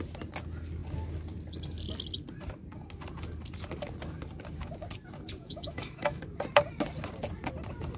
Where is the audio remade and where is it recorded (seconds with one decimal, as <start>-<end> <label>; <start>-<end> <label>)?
0.0-5.4 recorded; 5.4-6.2 remade; 6.2-8.0 recorded